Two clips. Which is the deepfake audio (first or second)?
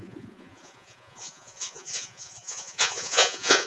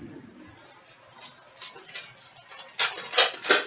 first